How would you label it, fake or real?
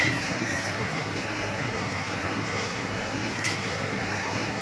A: fake